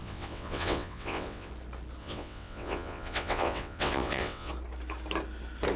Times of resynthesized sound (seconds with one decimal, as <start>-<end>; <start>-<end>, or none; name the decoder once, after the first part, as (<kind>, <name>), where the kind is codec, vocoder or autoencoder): 0.0-1.5 (vocoder, WaveNeXt); 2.0-4.5